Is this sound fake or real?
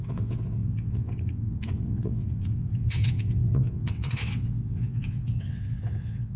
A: fake